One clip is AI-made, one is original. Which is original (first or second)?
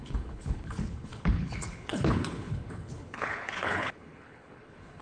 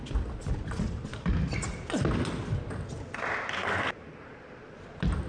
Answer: second